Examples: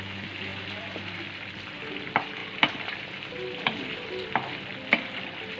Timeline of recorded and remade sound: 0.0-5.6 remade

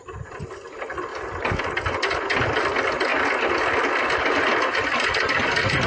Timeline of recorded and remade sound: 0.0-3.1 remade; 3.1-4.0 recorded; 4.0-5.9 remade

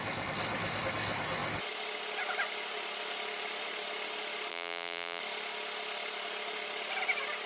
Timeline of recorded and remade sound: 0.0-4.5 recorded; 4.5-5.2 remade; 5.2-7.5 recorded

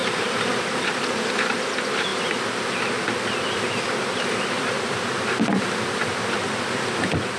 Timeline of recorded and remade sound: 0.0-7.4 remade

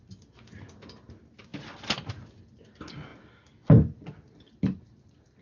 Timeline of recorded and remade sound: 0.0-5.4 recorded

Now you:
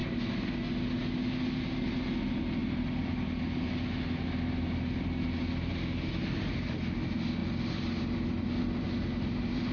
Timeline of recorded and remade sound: 0.0-9.7 recorded